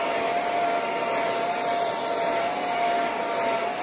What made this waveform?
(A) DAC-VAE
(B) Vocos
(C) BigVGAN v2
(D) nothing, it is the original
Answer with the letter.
D